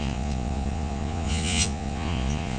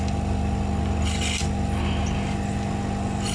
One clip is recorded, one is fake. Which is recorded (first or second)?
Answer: second